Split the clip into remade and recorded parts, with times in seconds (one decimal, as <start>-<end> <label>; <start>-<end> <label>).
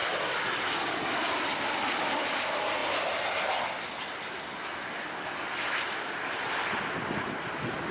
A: 0.0-7.9 recorded